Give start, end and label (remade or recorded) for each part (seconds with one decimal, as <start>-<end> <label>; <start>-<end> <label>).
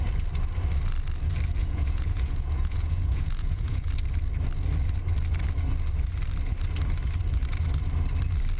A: 0.0-1.6 recorded; 1.6-3.9 remade; 3.9-8.6 recorded